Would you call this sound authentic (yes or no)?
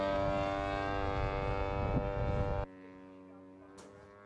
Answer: yes